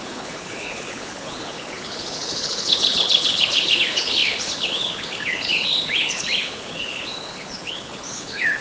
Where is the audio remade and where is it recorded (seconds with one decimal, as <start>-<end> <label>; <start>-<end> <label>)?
0.0-8.6 remade